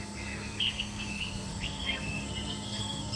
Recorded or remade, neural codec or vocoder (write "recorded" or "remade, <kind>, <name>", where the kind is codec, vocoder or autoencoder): remade, codec, SNAC